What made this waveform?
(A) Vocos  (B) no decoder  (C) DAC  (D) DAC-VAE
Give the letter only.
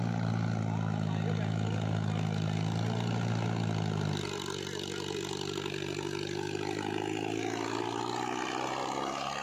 B